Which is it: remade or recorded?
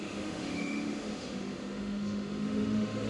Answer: remade